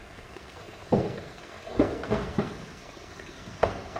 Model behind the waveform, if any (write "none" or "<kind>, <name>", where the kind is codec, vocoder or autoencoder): codec, SNAC